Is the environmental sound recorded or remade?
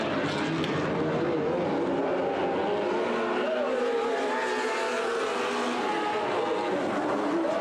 recorded